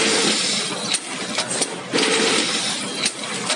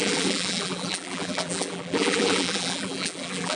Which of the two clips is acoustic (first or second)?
first